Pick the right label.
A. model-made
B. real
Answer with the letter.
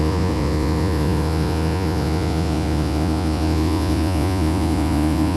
A